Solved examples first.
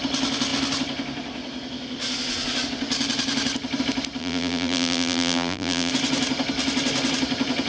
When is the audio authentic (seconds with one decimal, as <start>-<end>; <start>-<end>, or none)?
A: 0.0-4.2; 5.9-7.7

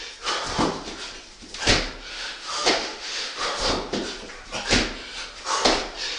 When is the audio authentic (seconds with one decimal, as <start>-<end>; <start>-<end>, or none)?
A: 0.0-2.1; 3.7-6.2

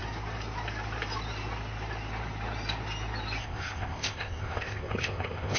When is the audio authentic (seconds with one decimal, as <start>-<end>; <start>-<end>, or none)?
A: 0.0-3.4

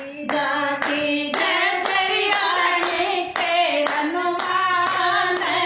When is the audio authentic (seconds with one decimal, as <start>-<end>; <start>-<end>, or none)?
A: 0.0-5.7

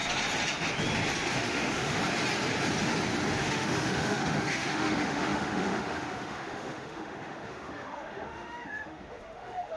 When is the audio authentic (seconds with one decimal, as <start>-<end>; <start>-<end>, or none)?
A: 0.0-1.3; 2.0-3.4

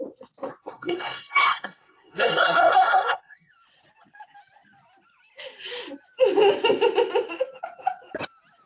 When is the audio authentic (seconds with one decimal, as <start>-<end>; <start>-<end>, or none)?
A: 0.0-0.6; 3.5-8.7

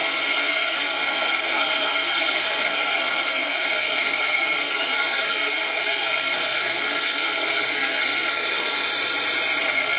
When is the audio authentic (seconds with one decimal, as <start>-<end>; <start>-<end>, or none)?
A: 8.9-9.6